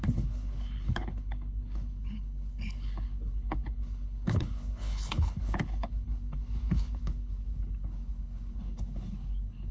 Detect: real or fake fake